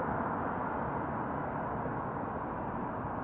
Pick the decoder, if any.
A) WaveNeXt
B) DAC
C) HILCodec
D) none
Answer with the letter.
D